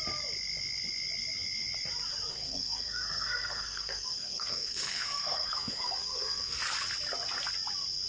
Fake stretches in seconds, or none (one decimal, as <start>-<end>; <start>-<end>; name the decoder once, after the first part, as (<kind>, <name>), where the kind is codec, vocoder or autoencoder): 2.3-6.6 (codec, SNAC)